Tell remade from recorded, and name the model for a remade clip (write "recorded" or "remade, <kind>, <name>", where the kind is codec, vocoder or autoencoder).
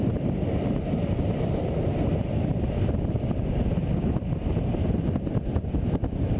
recorded